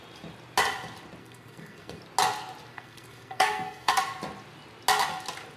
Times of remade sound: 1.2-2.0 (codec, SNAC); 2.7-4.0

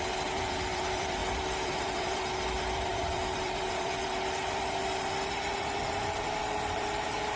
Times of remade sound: 0.0-7.4 (vocoder, BigVGAN v2)

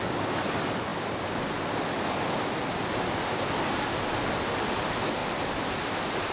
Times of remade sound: none